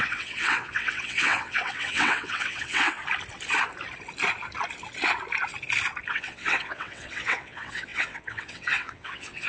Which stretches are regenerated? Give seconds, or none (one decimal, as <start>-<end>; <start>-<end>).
0.0-3.0; 6.1-9.5